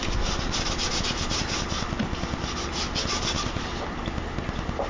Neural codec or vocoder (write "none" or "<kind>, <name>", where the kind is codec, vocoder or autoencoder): none